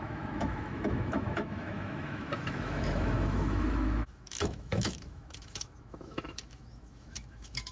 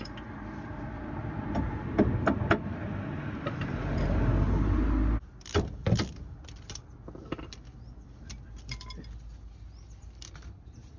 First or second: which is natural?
second